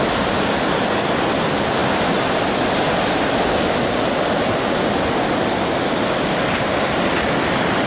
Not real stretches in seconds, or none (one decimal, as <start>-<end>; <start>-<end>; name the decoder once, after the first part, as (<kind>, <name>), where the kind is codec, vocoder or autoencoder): none